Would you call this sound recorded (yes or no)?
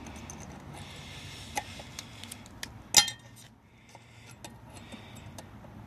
yes